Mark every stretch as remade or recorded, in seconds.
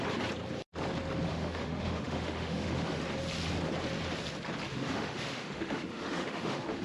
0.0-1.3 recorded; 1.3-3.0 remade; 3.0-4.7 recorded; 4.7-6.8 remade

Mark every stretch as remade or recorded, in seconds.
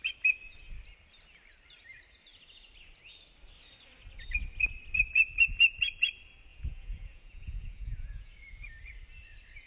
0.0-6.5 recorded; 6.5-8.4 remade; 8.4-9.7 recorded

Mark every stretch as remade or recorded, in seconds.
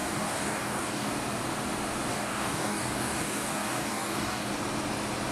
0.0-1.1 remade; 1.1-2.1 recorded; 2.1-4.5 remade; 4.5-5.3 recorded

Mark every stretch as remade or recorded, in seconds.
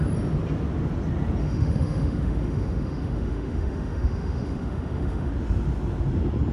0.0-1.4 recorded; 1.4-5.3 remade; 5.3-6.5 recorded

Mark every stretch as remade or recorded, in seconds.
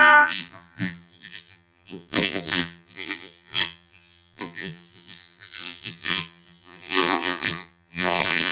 0.0-8.5 remade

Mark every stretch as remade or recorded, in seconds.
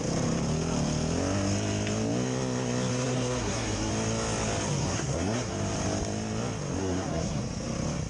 0.0-2.9 recorded; 2.9-3.9 remade; 3.9-4.8 recorded; 4.8-5.5 remade; 5.5-6.8 recorded; 6.8-7.4 remade; 7.4-8.1 recorded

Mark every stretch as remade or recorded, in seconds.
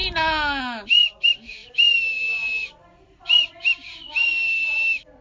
0.0-5.2 recorded